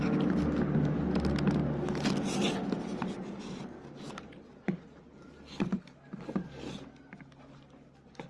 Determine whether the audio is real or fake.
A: real